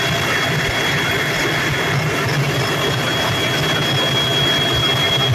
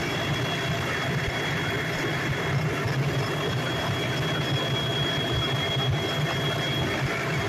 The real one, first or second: first